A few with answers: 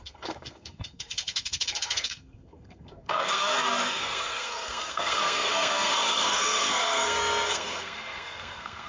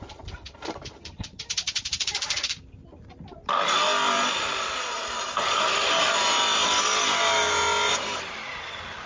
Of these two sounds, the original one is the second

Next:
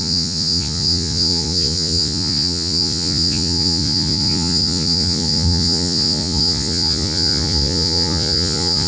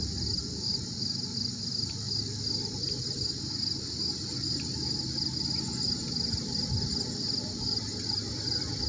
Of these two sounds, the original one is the second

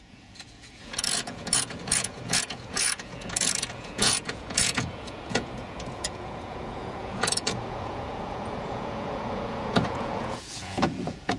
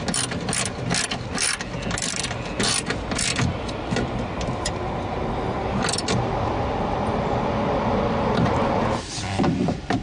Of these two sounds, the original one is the second